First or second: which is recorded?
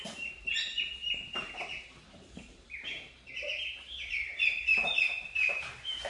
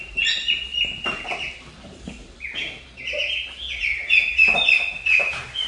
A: second